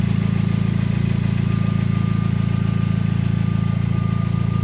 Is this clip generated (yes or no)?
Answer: no